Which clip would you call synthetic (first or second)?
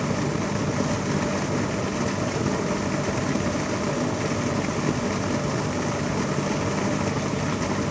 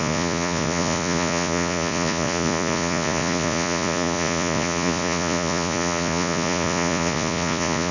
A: second